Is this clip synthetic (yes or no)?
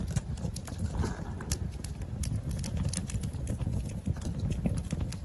no